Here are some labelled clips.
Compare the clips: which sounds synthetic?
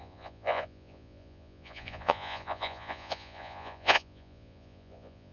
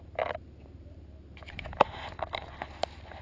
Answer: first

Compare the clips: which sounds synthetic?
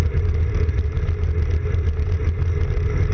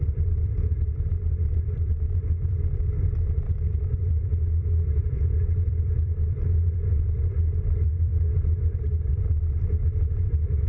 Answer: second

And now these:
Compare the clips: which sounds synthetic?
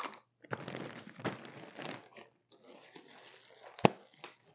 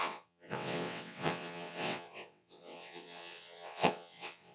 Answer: second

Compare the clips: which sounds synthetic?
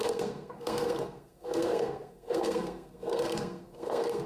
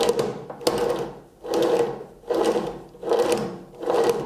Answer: first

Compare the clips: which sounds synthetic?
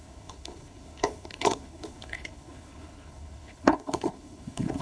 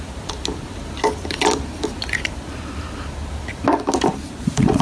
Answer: first